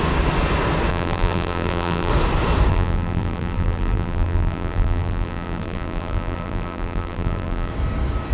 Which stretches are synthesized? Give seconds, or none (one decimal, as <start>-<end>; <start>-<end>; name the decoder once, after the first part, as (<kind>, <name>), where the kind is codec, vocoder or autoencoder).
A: 0.9-2.1 (vocoder, BigVGAN v2); 2.7-7.7